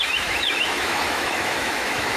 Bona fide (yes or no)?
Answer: no